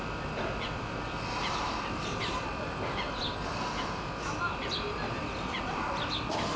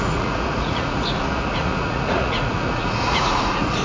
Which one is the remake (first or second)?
second